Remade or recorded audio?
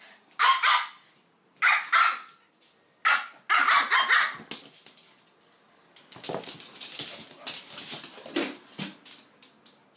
recorded